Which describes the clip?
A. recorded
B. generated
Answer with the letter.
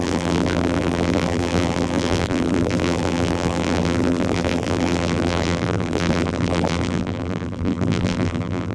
B